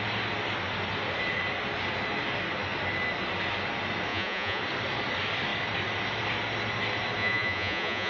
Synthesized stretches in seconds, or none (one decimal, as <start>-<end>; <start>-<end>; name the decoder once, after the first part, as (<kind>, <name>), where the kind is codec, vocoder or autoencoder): 4.1-4.6 (vocoder, Vocos); 7.2-8.1